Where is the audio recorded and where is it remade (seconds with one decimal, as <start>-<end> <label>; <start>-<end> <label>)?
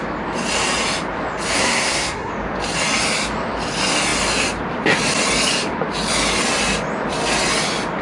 0.0-1.6 recorded; 1.6-2.3 remade; 2.3-8.0 recorded